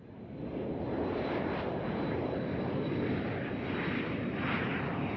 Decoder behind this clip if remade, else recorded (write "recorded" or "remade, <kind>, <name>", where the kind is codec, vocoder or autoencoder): recorded